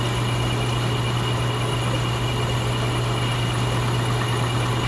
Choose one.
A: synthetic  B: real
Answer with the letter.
B